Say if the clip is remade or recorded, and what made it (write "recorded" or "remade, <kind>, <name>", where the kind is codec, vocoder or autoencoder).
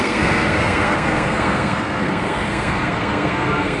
remade, codec, SNAC